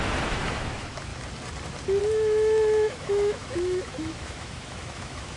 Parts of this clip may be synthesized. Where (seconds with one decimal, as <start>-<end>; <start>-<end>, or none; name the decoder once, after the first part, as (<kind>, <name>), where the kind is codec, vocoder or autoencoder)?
0.0-1.1 (autoencoder, DAC-VAE); 2.0-5.4